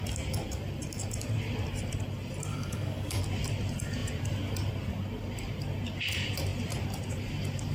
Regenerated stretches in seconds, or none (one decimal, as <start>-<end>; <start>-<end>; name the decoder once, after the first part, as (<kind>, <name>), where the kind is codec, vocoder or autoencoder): 2.5-3.2 (codec, DAC)